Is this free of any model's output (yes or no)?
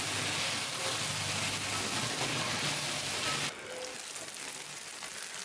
yes